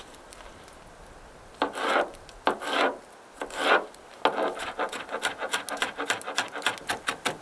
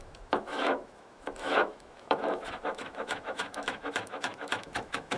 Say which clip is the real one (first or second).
first